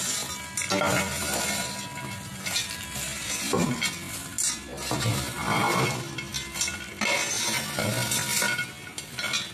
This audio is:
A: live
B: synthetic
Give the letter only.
A